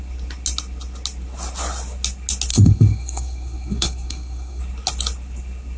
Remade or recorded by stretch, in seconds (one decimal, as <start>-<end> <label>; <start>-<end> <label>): 0.0-2.5 recorded; 2.5-4.6 remade; 4.6-5.8 recorded